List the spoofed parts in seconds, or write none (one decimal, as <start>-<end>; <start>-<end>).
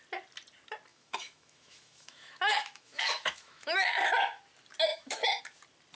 0.9-4.4; 4.9-5.4